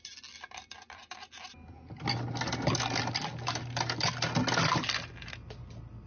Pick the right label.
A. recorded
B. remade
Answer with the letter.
A